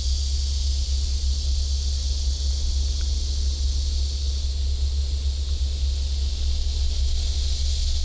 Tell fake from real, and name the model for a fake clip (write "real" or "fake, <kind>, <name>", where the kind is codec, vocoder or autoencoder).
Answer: real